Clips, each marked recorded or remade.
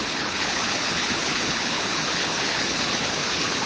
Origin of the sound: remade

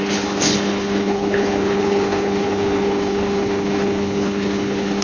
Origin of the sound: remade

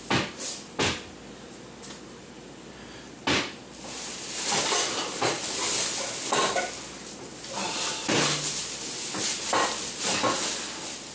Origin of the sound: recorded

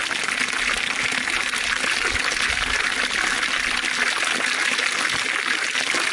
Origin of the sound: recorded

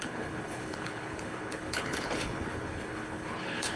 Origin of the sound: remade